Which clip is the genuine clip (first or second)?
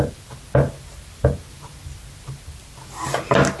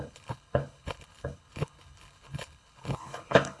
first